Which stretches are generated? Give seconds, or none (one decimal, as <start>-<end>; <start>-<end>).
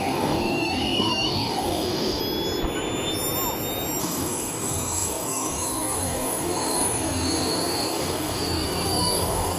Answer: 0.0-2.2; 4.0-9.6